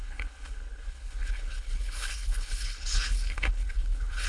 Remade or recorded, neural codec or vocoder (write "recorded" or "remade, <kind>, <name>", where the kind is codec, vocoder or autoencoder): remade, codec, HILCodec